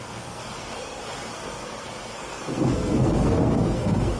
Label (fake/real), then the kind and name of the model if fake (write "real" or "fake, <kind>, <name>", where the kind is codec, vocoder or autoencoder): fake, codec, SNAC